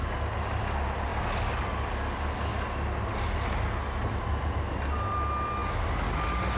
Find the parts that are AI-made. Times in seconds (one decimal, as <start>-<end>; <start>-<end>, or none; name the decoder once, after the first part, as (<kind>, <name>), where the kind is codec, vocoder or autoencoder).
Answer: none